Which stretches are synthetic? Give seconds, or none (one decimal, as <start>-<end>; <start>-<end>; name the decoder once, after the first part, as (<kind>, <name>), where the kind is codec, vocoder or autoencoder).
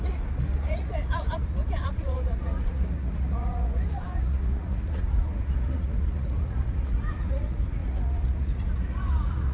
0.0-9.5 (vocoder, Vocos)